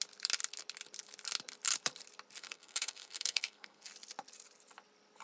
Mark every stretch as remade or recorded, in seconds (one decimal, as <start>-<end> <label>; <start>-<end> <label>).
0.0-2.4 recorded; 2.4-3.9 remade; 3.9-5.2 recorded